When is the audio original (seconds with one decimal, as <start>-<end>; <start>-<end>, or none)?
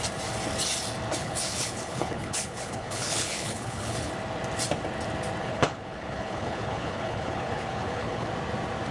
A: 0.0-1.2; 4.1-5.4; 8.3-8.9